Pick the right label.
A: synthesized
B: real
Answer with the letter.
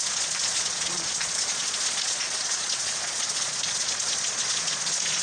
A